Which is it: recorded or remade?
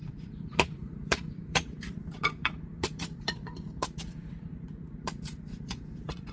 remade